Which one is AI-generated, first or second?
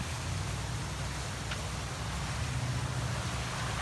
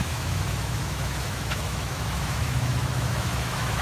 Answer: second